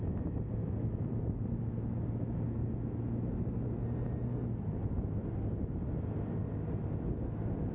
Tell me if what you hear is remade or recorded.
recorded